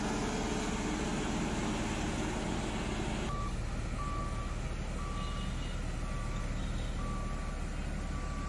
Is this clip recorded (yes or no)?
yes